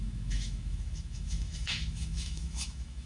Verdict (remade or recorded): remade